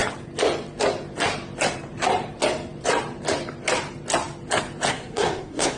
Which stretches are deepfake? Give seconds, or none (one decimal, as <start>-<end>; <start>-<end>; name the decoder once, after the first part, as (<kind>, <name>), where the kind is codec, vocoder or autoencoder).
4.9-5.8 (codec, SNAC)

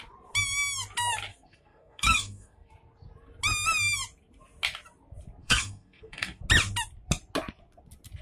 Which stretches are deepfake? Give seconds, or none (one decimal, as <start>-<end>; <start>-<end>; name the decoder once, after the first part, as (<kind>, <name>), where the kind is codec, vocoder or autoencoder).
1.3-2.7 (codec, SNAC); 5.4-6.4

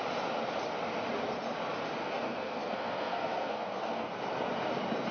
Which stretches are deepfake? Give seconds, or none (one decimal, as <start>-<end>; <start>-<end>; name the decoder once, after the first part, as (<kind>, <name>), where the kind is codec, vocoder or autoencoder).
2.0-4.1 (codec, SNAC)